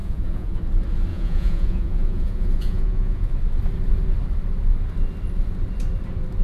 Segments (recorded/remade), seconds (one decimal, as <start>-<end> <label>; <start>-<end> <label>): 0.0-0.6 remade; 0.6-1.1 recorded; 1.1-3.3 remade; 3.3-6.4 recorded